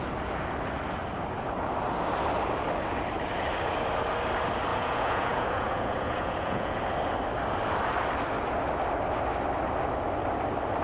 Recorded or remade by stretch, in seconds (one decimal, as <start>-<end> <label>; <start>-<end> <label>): 0.0-4.7 recorded; 4.7-6.8 remade; 6.8-10.8 recorded